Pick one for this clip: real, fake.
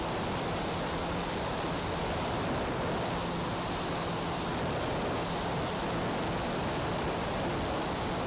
real